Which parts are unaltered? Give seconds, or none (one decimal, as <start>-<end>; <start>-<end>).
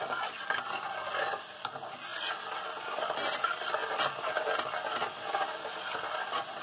0.0-6.6